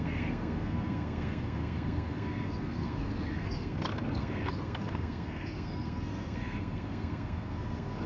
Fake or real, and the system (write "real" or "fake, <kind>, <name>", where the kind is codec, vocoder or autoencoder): fake, codec, SNAC